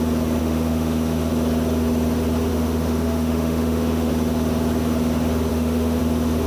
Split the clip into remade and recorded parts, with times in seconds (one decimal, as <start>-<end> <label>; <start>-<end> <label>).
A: 0.0-0.4 recorded; 0.4-1.3 remade; 1.3-2.5 recorded; 2.5-4.1 remade; 4.1-5.5 recorded; 5.5-6.0 remade; 6.0-6.5 recorded